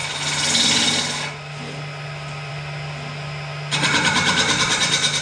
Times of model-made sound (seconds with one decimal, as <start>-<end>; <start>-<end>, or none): none